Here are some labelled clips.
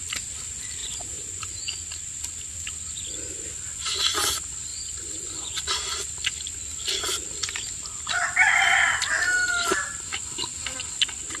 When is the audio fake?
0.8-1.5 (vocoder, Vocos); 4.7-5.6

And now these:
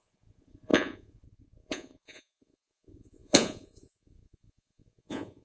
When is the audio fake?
0.0-5.4 (vocoder, Vocos)

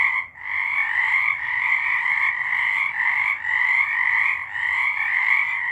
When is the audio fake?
0.8-2.3 (vocoder, BigVGAN v2)

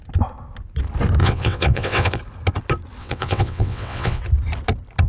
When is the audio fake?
1.2-2.2 (vocoder, WaveNeXt); 3.0-4.2